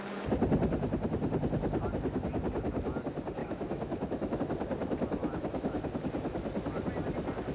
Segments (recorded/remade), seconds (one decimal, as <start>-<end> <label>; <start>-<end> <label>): 0.0-3.4 recorded; 3.4-4.4 remade; 4.4-5.2 recorded; 5.2-5.8 remade; 5.8-7.5 recorded

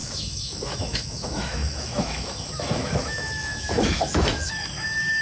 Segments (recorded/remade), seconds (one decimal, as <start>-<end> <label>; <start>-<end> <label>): 0.0-5.2 remade

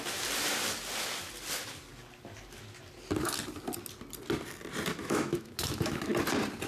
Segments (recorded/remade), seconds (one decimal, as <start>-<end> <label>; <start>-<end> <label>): 0.0-5.0 recorded; 5.0-6.1 remade; 6.1-6.7 recorded

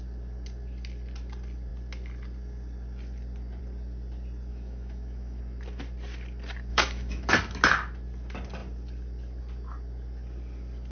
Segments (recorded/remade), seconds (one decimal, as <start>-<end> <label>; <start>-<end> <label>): 0.0-4.5 recorded; 4.5-5.4 remade; 5.4-6.7 recorded; 6.7-7.3 remade; 7.3-10.9 recorded

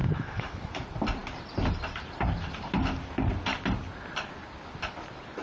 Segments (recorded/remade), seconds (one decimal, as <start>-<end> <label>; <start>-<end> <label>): 0.0-0.7 remade; 0.7-5.4 recorded

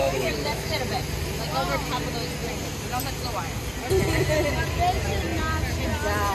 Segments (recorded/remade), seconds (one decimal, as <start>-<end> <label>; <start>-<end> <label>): 0.0-0.7 remade; 0.7-6.3 recorded